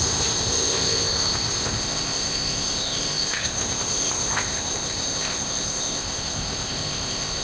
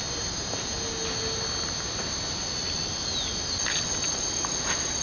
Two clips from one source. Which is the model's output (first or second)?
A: first